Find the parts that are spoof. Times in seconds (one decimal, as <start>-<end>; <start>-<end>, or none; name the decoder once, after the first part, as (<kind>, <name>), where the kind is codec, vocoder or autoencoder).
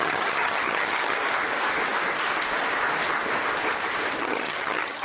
0.0-1.2 (vocoder, HiFi-GAN); 4.2-5.0